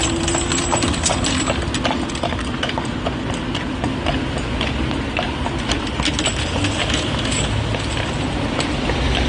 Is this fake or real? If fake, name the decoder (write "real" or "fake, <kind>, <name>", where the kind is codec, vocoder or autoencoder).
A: real